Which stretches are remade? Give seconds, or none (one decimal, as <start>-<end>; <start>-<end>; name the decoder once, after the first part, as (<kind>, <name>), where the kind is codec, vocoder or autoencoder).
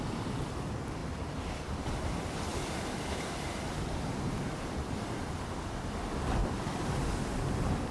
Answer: 1.0-5.7 (vocoder, BigVGAN v2); 6.4-7.1